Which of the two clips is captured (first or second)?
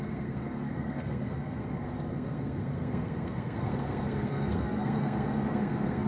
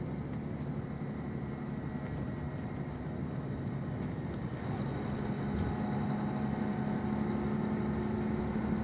second